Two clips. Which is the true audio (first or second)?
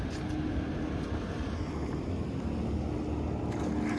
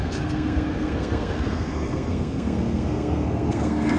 first